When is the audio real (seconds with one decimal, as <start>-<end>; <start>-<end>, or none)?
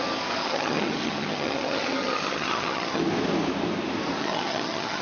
0.0-0.4; 3.0-4.2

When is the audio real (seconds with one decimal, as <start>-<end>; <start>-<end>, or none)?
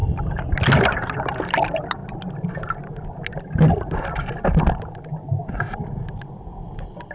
0.0-7.1